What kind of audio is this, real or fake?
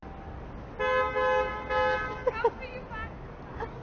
real